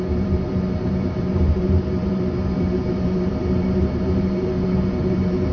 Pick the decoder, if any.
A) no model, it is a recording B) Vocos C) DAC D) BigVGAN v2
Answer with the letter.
D